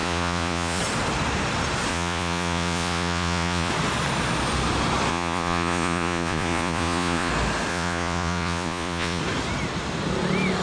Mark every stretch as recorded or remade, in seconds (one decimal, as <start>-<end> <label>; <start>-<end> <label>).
0.0-0.8 remade; 0.8-1.9 recorded; 1.9-3.7 remade; 3.7-5.1 recorded; 5.1-7.3 remade; 7.3-7.7 recorded; 7.7-9.2 remade; 9.2-10.6 recorded